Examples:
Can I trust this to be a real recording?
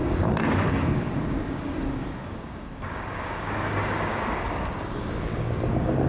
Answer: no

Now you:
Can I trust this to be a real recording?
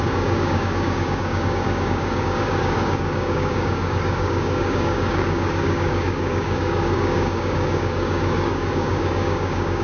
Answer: no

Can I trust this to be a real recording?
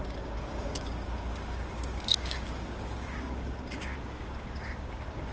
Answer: no